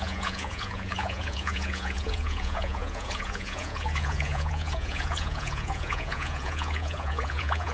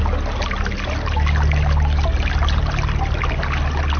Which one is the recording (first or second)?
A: second